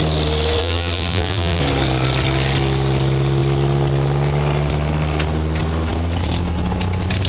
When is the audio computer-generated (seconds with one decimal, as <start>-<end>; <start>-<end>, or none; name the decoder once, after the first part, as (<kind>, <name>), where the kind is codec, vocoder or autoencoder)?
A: 0.6-1.6 (vocoder, BigVGAN v2)